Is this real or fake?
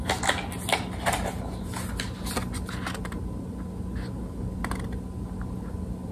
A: real